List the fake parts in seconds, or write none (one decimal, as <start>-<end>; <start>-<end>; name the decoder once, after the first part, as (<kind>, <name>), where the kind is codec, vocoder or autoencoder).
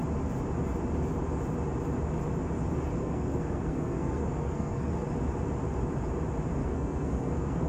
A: 3.0-4.9 (codec, SNAC); 6.6-7.7